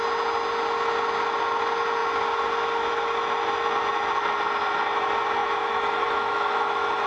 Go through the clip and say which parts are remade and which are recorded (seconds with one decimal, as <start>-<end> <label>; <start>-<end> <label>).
0.0-5.4 recorded; 5.4-7.1 remade